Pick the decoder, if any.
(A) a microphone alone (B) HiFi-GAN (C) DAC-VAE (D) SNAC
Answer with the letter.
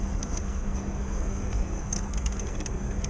D